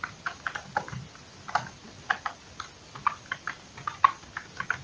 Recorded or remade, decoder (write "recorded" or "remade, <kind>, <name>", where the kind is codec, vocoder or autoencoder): recorded